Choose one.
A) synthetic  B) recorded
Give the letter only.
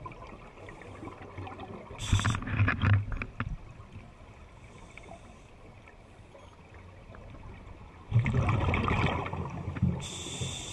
B